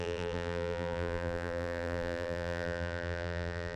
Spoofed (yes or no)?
yes